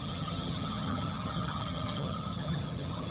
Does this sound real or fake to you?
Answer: fake